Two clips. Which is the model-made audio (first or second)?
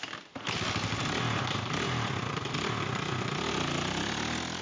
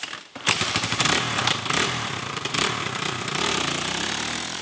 second